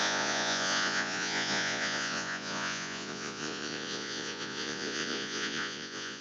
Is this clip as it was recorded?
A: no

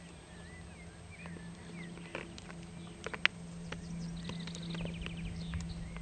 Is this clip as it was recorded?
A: yes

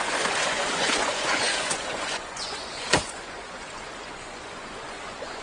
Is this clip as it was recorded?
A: no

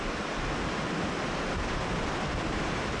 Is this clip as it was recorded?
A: yes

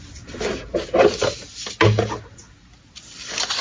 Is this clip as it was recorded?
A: yes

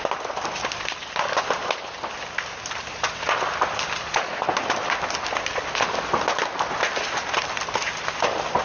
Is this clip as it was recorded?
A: yes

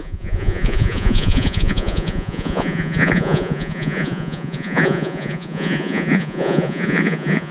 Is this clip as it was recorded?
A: no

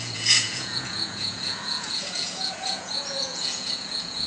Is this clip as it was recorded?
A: no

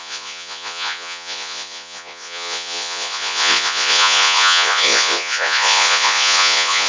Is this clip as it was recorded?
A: no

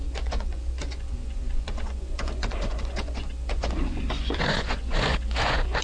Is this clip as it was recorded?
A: no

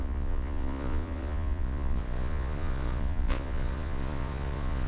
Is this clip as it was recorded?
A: no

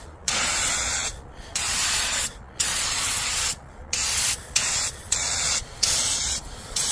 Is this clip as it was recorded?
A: no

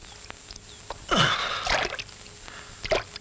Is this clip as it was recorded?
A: yes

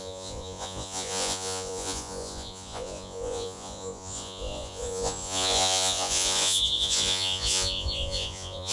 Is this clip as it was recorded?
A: no